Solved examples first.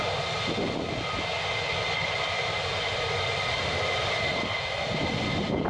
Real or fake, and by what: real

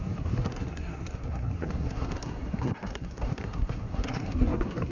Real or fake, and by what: fake, codec, SNAC